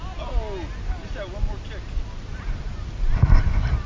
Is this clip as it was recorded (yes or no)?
yes